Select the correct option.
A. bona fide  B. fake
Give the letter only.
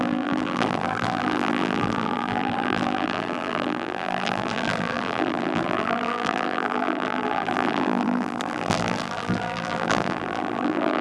B